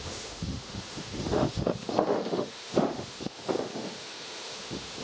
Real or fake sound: fake